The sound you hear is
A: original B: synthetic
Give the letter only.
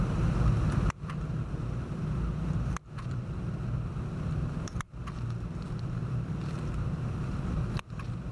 B